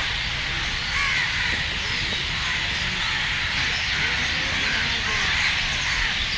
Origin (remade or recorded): recorded